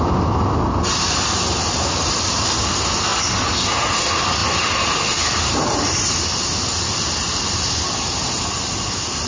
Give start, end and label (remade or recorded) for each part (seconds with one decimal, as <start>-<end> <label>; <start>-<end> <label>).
0.0-4.4 recorded; 4.4-6.2 remade; 6.2-9.3 recorded